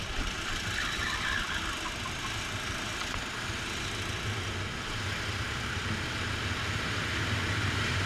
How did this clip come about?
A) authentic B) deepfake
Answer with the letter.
A